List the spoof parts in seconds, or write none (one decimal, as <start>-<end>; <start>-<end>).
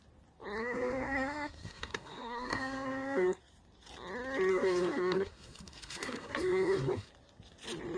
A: 0.6-3.4; 4.5-7.1